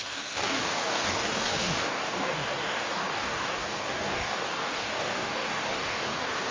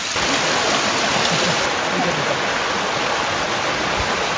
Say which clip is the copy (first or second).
first